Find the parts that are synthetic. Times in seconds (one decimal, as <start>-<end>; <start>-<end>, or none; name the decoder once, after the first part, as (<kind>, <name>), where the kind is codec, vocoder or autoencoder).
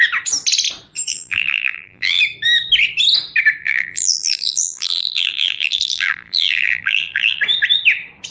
1.1-2.2 (vocoder, BigVGAN v2); 3.6-7.4